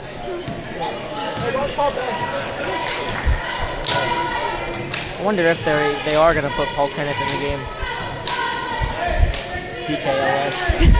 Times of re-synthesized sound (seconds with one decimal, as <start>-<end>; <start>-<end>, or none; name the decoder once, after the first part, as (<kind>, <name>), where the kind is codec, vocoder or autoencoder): 1.0-3.6 (codec, DAC)